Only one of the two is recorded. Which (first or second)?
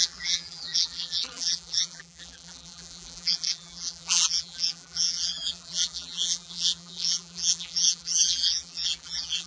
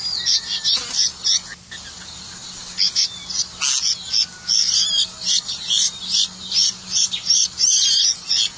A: second